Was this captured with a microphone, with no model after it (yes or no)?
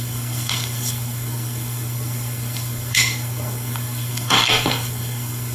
no